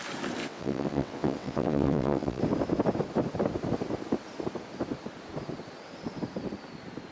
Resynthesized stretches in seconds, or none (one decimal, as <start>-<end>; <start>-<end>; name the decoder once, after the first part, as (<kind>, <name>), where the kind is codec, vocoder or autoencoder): 0.4-2.4 (vocoder, WaveNeXt)